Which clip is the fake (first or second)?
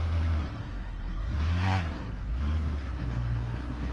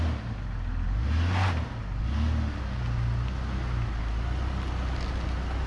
first